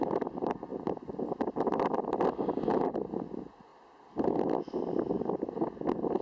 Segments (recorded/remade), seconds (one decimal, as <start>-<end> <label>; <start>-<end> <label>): 0.0-6.2 recorded